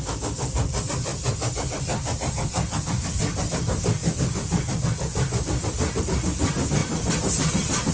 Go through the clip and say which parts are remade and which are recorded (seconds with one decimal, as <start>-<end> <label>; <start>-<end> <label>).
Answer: 0.0-7.9 recorded